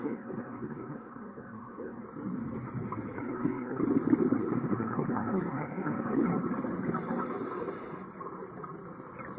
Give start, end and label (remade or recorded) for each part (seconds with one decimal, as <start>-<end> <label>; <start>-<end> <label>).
0.0-2.0 remade; 2.0-3.2 recorded; 3.2-3.8 remade; 3.8-4.4 recorded; 4.4-6.3 remade; 6.3-9.4 recorded